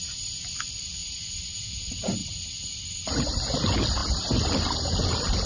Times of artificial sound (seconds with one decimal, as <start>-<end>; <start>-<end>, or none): none